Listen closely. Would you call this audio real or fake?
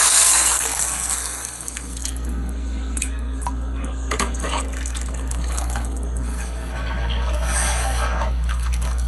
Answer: fake